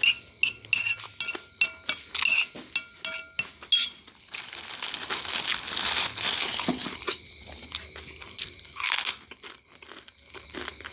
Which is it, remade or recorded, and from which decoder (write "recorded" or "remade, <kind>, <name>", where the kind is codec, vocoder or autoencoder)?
recorded